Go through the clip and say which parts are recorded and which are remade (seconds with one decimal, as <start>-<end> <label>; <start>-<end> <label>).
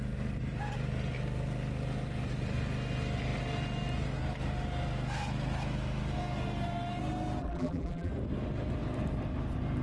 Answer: 0.0-7.4 recorded; 7.4-8.1 remade; 8.1-9.8 recorded